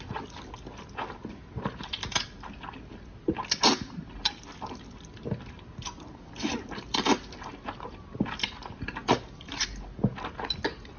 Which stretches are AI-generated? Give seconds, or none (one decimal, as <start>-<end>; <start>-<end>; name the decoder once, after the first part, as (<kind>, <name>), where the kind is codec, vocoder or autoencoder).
none